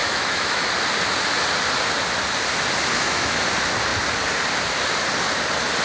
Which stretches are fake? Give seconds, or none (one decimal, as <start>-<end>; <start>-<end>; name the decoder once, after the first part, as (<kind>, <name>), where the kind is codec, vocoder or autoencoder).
0.0-0.7 (autoencoder, DAC-VAE); 2.9-3.4